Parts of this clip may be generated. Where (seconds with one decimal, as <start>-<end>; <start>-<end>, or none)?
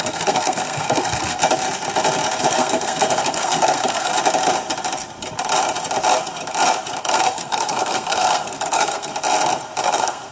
0.0-1.4; 2.5-4.1; 7.0-9.1; 9.8-10.3